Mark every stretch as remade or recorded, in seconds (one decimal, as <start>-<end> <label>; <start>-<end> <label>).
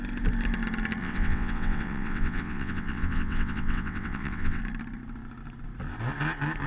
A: 0.0-1.0 recorded; 1.0-4.6 remade; 4.6-6.7 recorded